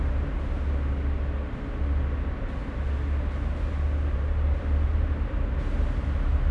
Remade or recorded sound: recorded